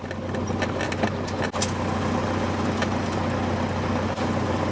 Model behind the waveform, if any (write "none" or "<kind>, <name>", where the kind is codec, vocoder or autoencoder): none